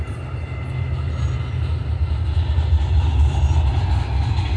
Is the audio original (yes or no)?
yes